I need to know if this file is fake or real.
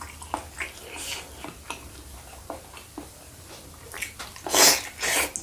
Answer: real